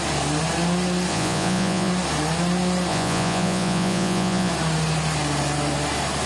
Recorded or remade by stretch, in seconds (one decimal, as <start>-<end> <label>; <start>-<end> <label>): 0.0-1.1 recorded; 1.1-1.9 remade; 1.9-2.9 recorded; 2.9-4.5 remade; 4.5-6.3 recorded